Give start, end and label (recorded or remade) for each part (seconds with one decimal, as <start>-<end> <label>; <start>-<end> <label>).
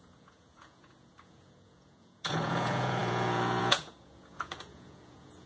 0.0-5.5 remade